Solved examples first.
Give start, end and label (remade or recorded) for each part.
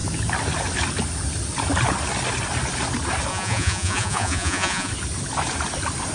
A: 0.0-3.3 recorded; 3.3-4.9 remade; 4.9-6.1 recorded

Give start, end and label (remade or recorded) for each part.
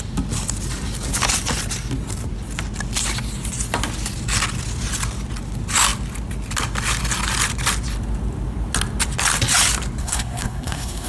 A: 0.0-10.0 recorded; 10.0-11.1 remade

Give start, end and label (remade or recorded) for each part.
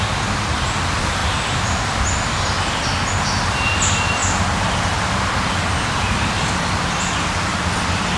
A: 0.0-8.2 recorded